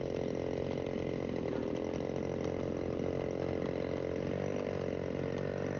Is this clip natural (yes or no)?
yes